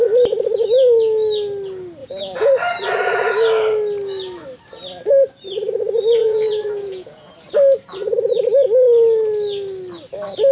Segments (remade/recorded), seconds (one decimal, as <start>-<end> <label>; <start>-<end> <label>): 0.0-2.0 recorded; 2.0-2.5 remade; 2.5-6.2 recorded; 6.2-7.3 remade; 7.3-10.5 recorded